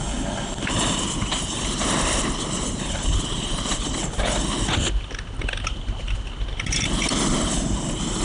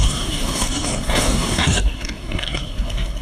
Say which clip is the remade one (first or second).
second